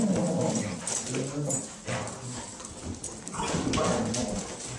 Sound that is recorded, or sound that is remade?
recorded